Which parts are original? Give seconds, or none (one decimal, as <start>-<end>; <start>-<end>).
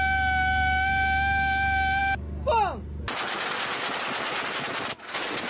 0.0-5.5